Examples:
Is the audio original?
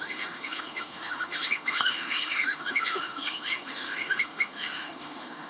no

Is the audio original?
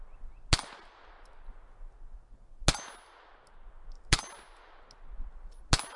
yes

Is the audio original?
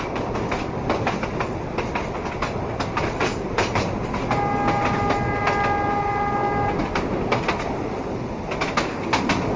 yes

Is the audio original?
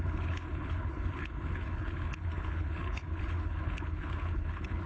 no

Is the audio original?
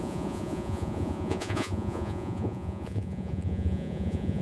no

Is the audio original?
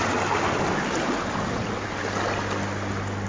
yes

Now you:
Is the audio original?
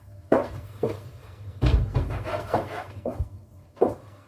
no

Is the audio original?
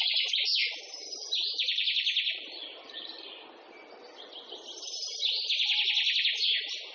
yes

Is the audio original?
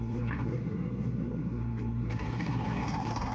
no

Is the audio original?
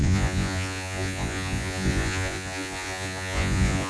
no